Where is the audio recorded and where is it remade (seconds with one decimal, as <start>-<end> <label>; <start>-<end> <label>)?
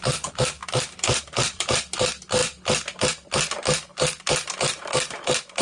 0.0-5.6 recorded